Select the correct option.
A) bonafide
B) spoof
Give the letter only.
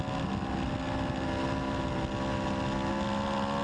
A